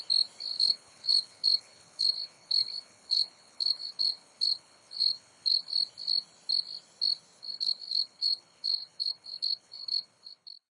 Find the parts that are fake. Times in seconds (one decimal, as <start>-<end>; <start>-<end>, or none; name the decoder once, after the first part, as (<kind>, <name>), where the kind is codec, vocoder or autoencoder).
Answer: 0.5-5.7 (codec, HILCodec); 7.4-10.7